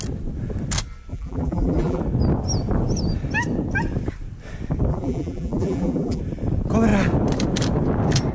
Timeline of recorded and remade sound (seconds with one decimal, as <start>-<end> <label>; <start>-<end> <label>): 0.0-1.1 recorded; 1.1-2.0 remade; 2.0-4.9 recorded; 4.9-6.2 remade; 6.2-8.3 recorded

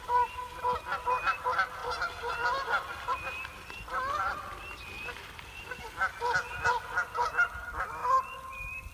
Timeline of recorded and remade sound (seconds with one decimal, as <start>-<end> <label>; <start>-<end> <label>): 0.0-0.4 remade; 0.4-1.3 recorded; 1.3-8.9 remade

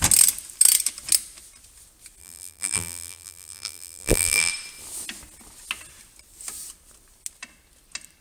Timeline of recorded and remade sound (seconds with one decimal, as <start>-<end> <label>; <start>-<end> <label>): 0.0-2.2 recorded; 2.2-4.5 remade; 4.5-8.2 recorded

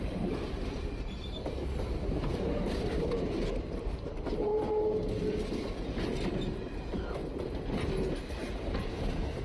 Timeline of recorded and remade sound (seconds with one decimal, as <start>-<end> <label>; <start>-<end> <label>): 0.0-4.5 remade; 4.5-6.5 recorded; 6.5-7.2 remade; 7.2-8.2 recorded; 8.2-9.4 remade

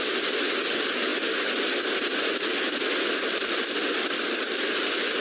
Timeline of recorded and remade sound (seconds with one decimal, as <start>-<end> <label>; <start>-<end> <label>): 0.0-1.1 remade; 1.1-2.9 recorded; 2.9-5.2 remade

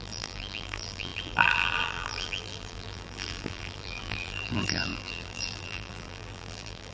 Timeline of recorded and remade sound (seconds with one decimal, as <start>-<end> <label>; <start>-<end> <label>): 0.0-6.9 remade

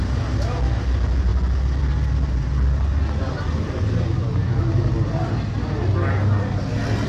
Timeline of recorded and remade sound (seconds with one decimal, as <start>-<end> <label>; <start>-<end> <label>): 0.0-7.1 recorded

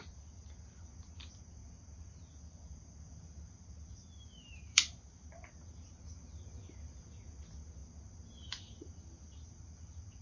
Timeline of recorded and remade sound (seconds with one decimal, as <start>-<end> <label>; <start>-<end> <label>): 0.0-10.2 recorded